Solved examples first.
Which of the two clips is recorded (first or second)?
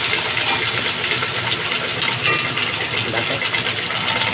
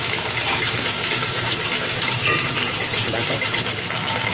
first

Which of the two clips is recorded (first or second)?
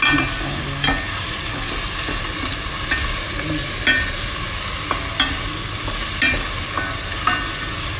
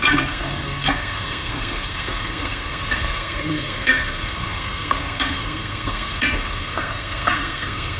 first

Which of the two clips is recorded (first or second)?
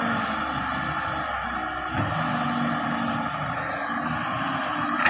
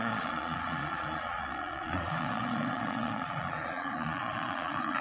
first